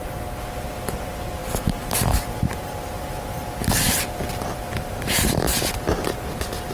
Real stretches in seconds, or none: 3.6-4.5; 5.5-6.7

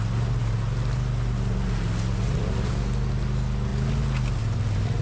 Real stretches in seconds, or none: 0.0-5.0